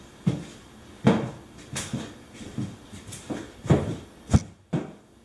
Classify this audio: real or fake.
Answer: real